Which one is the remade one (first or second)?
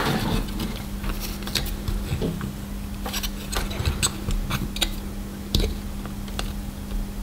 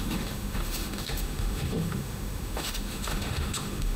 second